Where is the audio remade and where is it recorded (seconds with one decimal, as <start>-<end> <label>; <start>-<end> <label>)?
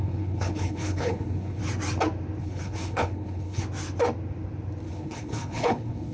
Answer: 0.0-1.6 remade; 1.6-2.4 recorded; 2.4-3.6 remade; 3.6-4.9 recorded; 4.9-6.1 remade